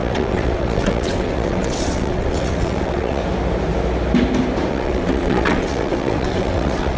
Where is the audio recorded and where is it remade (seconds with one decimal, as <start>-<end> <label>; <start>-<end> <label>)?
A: 0.0-3.2 remade; 3.2-4.7 recorded; 4.7-7.0 remade